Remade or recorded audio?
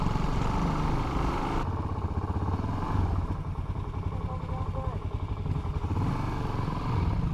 recorded